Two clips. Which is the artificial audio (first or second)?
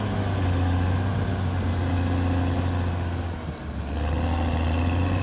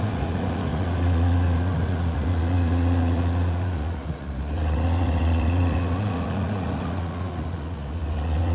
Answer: second